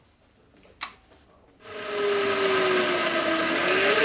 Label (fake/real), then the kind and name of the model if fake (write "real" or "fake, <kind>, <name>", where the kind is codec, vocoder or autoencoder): real